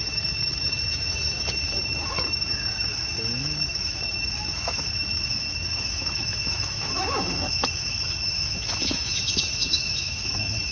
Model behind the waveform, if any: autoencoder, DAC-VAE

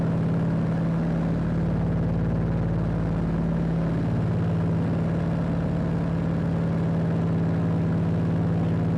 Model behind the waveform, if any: none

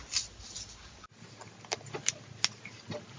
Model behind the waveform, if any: none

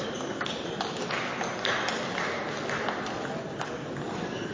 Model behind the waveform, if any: none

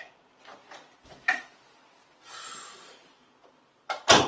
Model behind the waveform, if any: none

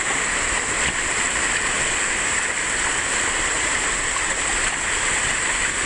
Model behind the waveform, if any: none